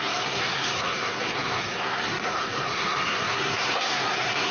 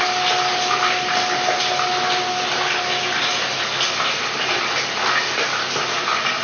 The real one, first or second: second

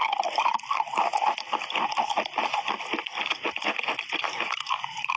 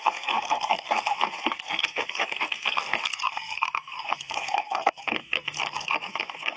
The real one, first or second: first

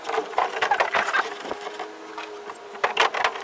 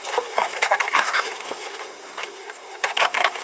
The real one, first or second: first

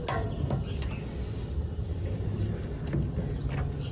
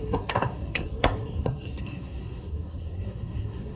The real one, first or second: first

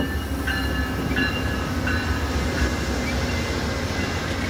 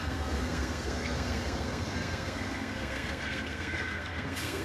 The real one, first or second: first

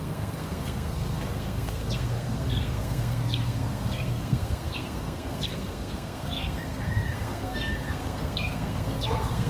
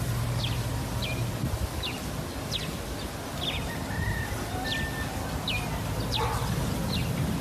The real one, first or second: second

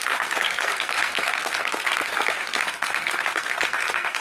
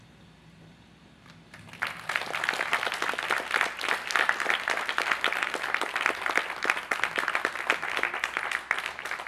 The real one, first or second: second